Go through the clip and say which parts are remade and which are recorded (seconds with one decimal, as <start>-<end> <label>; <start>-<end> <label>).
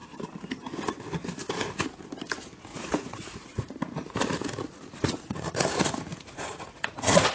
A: 0.0-2.7 recorded; 2.7-7.3 remade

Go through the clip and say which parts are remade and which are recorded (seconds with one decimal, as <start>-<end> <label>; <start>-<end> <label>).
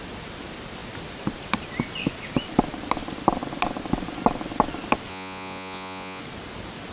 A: 0.0-5.1 recorded; 5.1-6.2 remade; 6.2-6.9 recorded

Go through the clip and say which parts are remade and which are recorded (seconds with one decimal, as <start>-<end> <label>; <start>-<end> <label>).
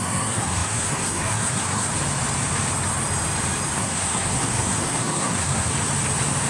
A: 0.0-1.9 remade; 1.9-3.8 recorded; 3.8-5.7 remade; 5.7-6.5 recorded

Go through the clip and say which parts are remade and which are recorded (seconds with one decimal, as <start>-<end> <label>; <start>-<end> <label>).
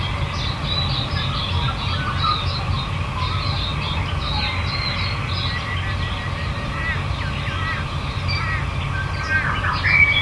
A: 0.0-10.2 recorded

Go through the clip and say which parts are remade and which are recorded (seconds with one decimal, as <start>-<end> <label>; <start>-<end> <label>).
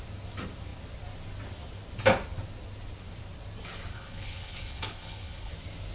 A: 0.0-3.9 recorded; 3.9-5.5 remade; 5.5-5.9 recorded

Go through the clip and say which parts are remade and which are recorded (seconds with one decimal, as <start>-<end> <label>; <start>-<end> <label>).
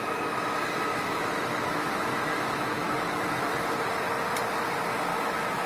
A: 0.0-0.9 recorded; 0.9-3.6 remade; 3.6-5.1 recorded; 5.1-5.7 remade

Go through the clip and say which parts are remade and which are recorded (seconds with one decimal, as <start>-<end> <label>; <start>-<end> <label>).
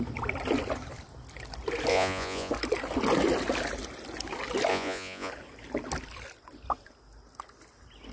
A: 0.0-1.9 recorded; 1.9-2.5 remade; 2.5-4.7 recorded; 4.7-5.3 remade; 5.3-8.1 recorded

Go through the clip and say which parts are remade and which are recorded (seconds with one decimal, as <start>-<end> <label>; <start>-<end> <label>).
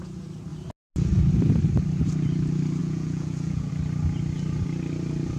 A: 0.0-2.8 recorded; 2.8-3.7 remade; 3.7-5.4 recorded